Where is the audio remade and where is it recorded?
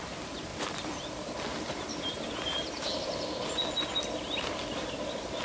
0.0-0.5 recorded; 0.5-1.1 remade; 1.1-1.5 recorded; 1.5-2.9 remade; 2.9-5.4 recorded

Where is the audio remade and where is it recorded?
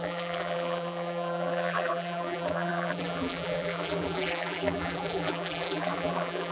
0.0-6.5 remade